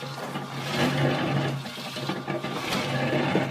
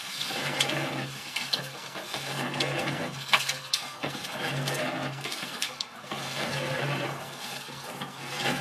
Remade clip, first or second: second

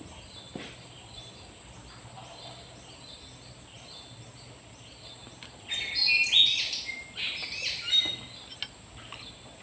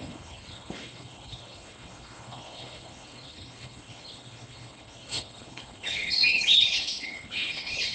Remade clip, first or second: second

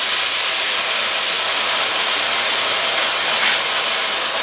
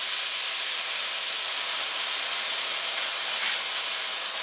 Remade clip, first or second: second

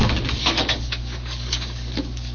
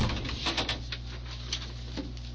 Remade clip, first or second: first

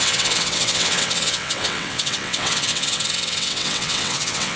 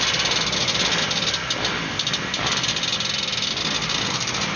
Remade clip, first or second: first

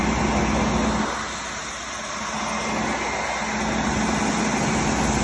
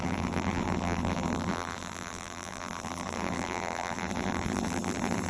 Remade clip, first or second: second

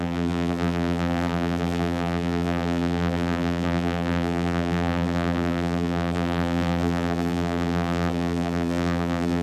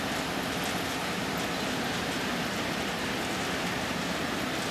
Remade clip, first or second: first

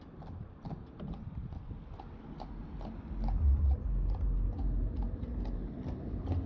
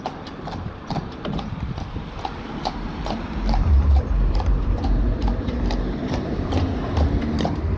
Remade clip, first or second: second